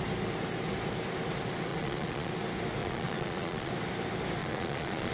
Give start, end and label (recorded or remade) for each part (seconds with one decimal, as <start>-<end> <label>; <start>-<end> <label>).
0.0-1.7 recorded; 1.7-2.3 remade; 2.3-2.8 recorded; 2.8-3.7 remade; 3.7-4.4 recorded; 4.4-5.1 remade